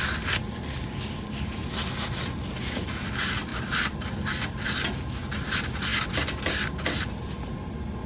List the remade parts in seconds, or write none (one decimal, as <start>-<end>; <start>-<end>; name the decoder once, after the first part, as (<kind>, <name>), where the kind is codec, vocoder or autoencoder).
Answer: none